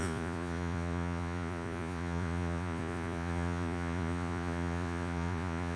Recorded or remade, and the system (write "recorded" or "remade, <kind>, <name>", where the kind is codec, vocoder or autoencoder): remade, vocoder, Vocos